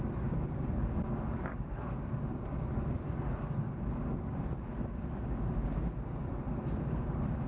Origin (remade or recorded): remade